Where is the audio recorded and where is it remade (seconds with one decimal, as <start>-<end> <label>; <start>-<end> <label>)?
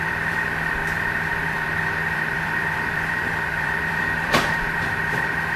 0.0-0.8 remade; 0.8-1.3 recorded; 1.3-5.6 remade